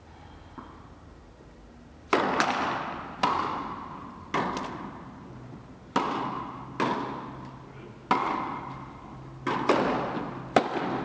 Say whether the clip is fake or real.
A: real